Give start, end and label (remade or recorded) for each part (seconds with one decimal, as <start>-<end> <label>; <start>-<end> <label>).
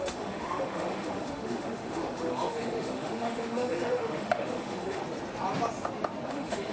0.0-5.0 remade; 5.0-6.3 recorded; 6.3-6.7 remade